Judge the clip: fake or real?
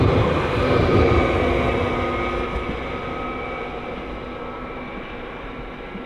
real